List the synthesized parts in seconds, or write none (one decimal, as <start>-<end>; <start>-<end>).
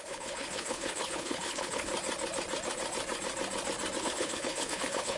0.0-1.9; 4.0-5.2